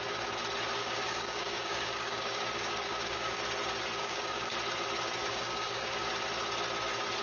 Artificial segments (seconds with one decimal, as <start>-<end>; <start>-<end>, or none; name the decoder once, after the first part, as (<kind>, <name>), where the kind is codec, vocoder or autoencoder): 0.8-3.4 (codec, DAC); 4.0-4.5; 5.3-6.1